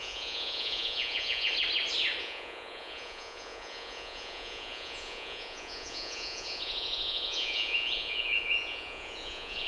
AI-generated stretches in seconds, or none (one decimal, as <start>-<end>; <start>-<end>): 0.0-1.5; 2.2-9.7